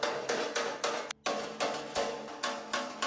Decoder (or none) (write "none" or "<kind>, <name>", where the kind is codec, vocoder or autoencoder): none